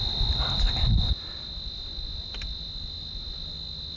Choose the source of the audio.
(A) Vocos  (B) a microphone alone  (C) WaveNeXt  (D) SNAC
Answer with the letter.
B